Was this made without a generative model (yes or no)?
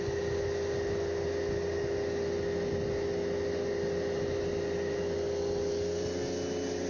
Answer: yes